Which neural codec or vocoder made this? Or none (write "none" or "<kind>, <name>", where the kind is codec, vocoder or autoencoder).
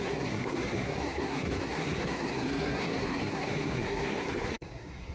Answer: codec, SNAC